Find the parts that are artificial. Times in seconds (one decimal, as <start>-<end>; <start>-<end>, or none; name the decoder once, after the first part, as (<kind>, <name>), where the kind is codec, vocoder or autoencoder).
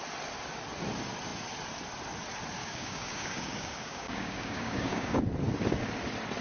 2.6-5.2 (codec, DAC)